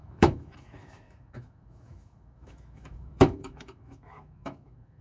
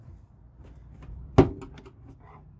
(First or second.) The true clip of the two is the second